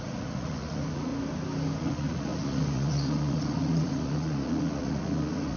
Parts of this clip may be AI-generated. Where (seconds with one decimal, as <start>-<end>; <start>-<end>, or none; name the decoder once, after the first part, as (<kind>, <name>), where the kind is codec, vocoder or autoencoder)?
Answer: 0.0-1.1 (vocoder, Vocos); 1.8-5.6